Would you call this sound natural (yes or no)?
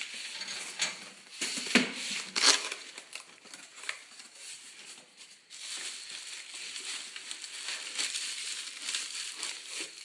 yes